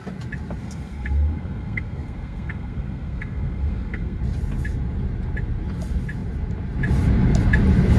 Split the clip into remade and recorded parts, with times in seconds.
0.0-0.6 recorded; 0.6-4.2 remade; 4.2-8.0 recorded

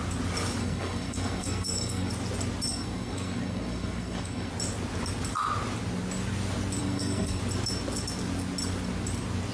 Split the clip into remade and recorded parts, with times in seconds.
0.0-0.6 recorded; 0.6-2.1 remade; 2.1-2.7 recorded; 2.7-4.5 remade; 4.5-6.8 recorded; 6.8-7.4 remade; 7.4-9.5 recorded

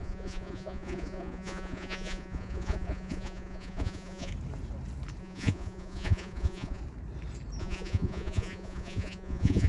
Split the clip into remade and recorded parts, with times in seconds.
0.0-4.3 remade; 4.3-5.2 recorded; 5.2-6.8 remade; 6.8-7.6 recorded; 7.6-9.7 remade

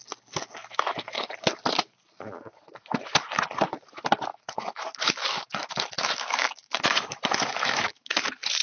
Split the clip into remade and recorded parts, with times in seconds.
0.0-0.6 recorded; 0.6-1.3 remade; 1.3-4.3 recorded; 4.3-8.2 remade; 8.2-8.6 recorded

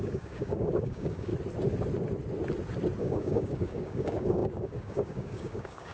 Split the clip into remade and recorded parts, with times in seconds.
0.0-1.3 remade; 1.3-3.0 recorded; 3.0-5.9 remade